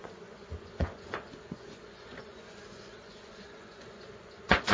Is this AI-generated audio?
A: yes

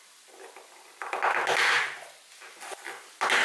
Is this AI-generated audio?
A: no